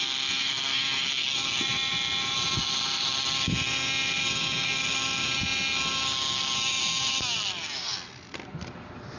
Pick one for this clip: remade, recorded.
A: recorded